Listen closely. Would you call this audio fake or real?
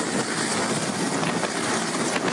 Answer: real